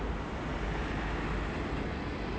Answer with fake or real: real